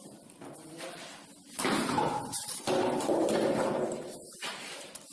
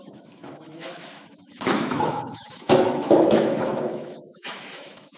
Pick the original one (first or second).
first